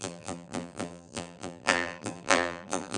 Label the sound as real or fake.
fake